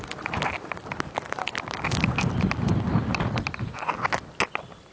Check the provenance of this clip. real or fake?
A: real